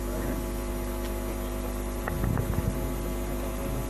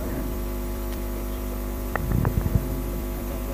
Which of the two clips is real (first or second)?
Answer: first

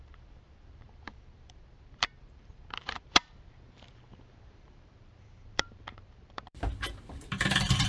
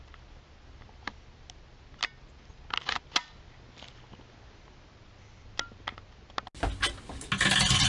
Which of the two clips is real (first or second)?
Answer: second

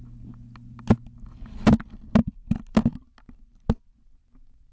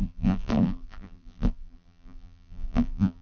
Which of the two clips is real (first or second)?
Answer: first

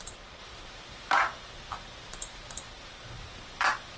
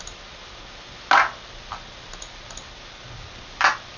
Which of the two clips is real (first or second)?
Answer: second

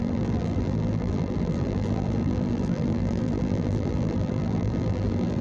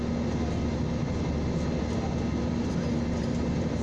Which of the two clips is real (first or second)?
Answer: second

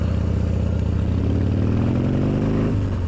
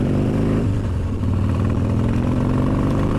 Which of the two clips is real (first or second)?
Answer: first